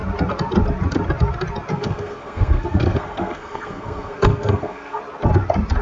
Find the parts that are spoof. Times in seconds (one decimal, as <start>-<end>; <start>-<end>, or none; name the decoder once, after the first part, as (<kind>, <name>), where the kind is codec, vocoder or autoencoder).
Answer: 1.7-5.0 (codec, SNAC)